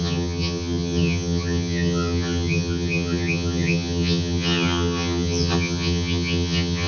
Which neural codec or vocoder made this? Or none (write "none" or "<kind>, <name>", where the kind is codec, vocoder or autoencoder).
vocoder, HiFi-GAN